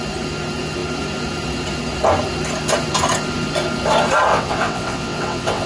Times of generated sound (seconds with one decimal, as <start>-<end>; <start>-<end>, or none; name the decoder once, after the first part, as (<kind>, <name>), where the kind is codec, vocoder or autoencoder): 4.3-5.7 (vocoder, WaveNeXt)